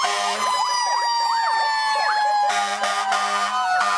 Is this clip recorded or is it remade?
recorded